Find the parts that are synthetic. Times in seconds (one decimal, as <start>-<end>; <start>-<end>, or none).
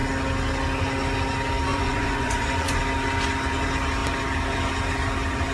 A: 1.7-2.8